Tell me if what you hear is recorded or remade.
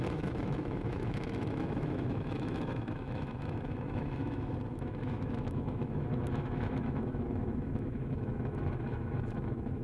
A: remade